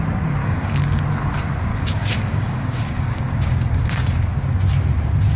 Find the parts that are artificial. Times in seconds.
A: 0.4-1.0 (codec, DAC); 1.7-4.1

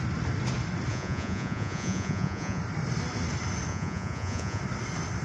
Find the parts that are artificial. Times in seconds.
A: 0.9-2.6 (vocoder, Vocos); 3.7-4.6

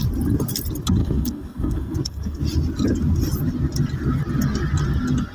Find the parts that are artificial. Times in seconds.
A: 1.0-2.4 (codec, SNAC)

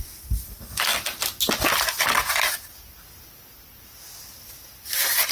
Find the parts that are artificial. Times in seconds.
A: none